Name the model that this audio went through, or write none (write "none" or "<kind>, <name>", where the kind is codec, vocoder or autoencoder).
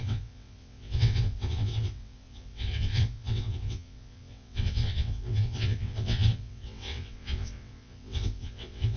vocoder, WaveNeXt